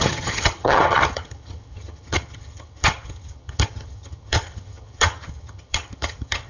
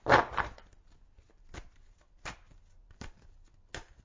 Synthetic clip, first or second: first